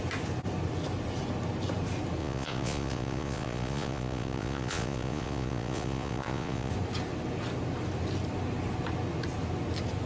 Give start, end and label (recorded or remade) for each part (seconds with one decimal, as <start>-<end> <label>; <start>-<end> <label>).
0.0-2.2 recorded; 2.2-6.7 remade; 6.7-10.1 recorded